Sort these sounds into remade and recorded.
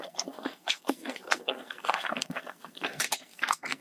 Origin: remade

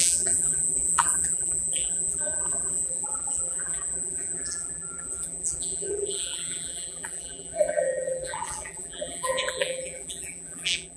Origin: remade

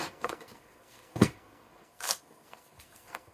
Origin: remade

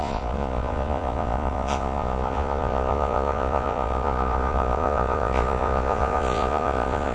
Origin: remade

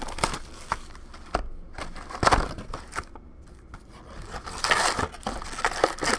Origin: recorded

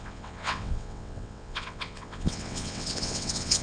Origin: remade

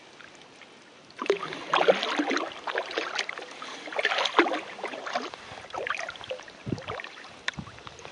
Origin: recorded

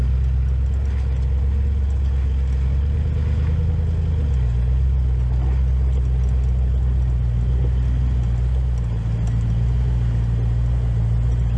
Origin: recorded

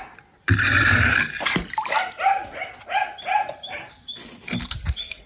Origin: recorded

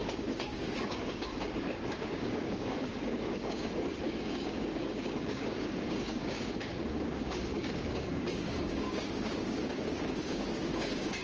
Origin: remade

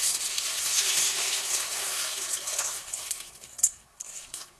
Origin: remade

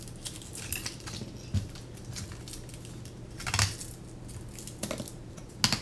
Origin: recorded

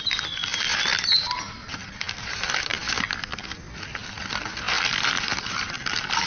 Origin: remade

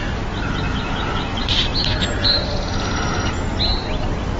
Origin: recorded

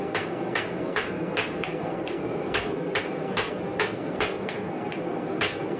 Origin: remade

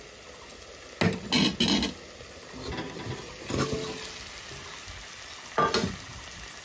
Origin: recorded